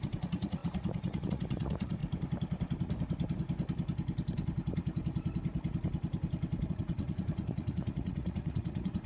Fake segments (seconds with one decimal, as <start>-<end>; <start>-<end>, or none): 0.0-2.0; 6.7-9.1